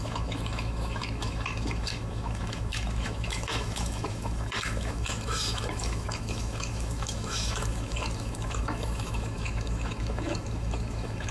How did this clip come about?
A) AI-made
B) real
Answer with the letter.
A